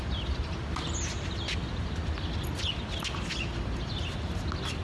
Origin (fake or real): real